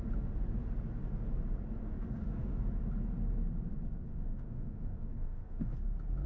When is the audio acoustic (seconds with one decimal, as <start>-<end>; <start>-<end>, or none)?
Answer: 0.0-1.8; 2.6-4.1; 5.7-6.3